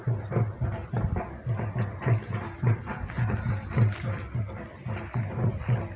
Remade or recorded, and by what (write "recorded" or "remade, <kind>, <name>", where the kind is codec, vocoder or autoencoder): recorded